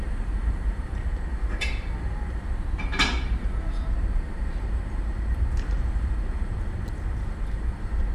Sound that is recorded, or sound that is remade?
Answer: remade